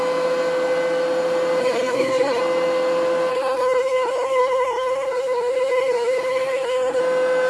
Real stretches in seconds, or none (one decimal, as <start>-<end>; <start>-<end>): 0.0-1.6; 2.4-3.3; 7.0-7.5